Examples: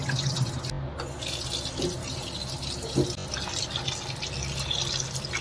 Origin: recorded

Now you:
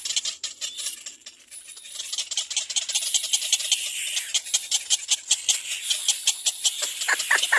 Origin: recorded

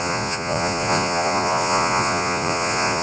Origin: remade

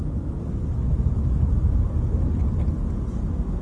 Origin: recorded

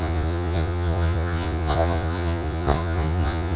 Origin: remade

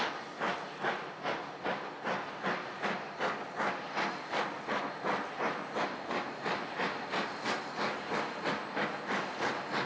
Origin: recorded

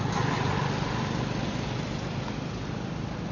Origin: recorded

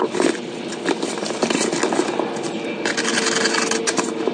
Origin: recorded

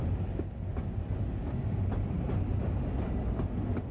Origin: recorded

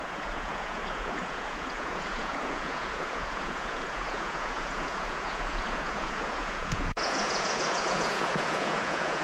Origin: remade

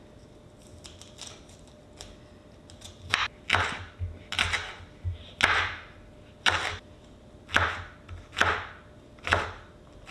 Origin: recorded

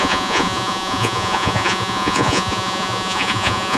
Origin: remade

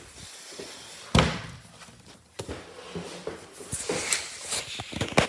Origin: recorded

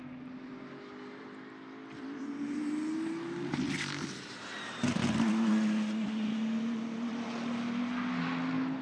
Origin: recorded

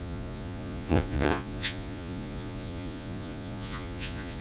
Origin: remade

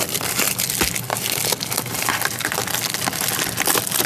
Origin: recorded